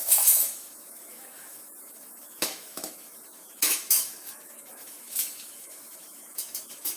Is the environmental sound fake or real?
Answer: fake